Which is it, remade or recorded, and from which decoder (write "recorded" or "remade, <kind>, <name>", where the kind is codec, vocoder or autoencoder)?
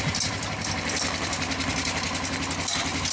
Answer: recorded